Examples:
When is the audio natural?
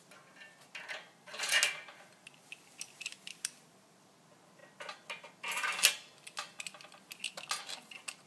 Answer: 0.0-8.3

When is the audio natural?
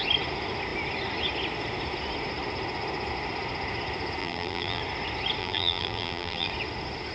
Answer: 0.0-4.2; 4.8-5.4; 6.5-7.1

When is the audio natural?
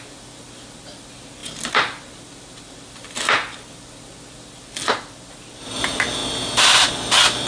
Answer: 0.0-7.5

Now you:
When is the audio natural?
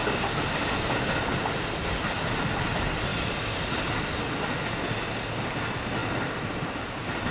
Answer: 0.0-7.3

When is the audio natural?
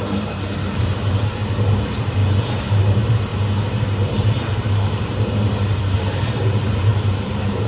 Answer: none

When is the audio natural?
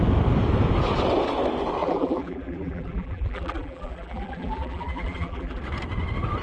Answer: 0.0-1.8; 5.6-6.4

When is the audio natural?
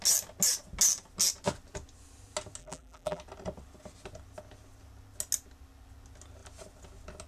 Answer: 0.0-2.6; 3.2-7.3